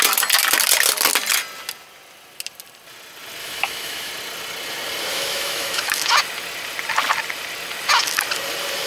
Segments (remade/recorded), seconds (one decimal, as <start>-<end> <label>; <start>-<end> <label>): 0.0-3.4 recorded; 3.4-4.1 remade; 4.1-5.1 recorded; 5.1-6.0 remade; 6.0-8.9 recorded